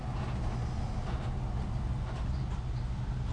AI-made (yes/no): no